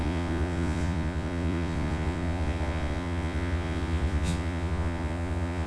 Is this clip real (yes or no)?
no